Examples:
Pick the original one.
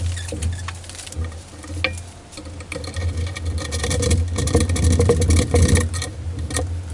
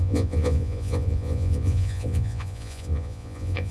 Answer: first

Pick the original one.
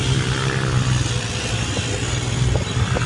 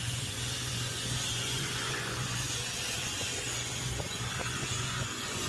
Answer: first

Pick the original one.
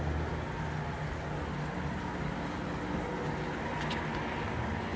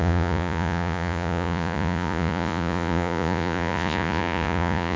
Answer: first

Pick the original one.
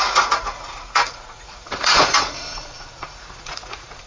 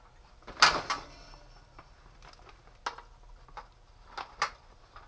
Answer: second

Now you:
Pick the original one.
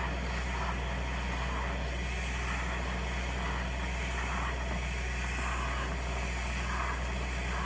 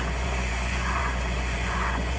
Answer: first